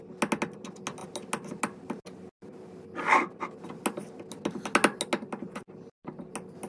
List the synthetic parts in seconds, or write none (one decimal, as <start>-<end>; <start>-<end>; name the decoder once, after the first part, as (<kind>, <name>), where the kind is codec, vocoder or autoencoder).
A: none